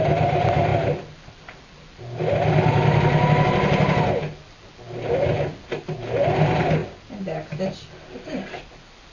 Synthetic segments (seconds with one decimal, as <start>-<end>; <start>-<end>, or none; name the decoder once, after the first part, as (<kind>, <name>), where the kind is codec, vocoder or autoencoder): none